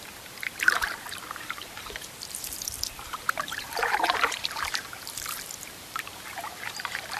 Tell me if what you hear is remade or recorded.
remade